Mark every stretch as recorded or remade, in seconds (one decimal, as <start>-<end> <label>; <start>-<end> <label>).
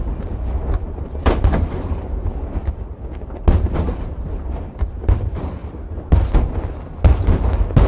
0.0-2.3 remade; 2.3-3.9 recorded; 3.9-5.6 remade; 5.6-7.9 recorded